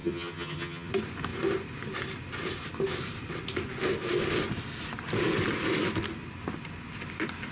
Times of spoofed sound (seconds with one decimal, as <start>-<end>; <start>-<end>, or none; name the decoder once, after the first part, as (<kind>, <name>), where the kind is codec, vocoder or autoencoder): 0.0-0.9 (vocoder, HiFi-GAN)